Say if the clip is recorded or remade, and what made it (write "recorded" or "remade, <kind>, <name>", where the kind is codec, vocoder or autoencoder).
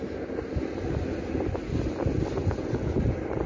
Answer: recorded